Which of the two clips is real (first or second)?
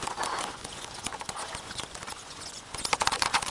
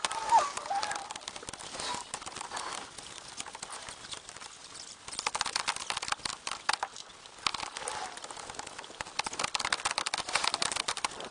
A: second